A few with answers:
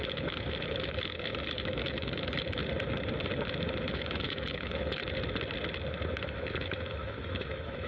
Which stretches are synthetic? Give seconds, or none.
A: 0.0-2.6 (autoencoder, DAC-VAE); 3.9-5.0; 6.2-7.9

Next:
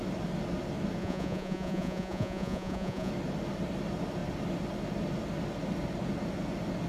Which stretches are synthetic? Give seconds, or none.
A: 1.0-3.1 (vocoder, Vocos)

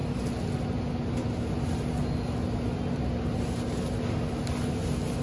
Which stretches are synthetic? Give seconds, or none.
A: none

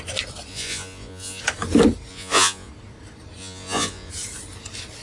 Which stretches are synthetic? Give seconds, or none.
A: 0.5-1.4 (vocoder, Vocos); 2.1-2.7; 3.4-4.1

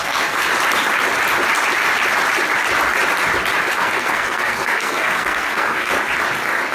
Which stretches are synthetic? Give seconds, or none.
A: 0.0-0.5 (codec, SNAC); 3.7-5.9

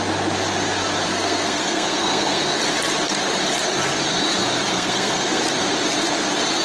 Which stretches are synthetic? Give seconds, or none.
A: 1.1-2.6 (codec, SNAC); 4.7-5.4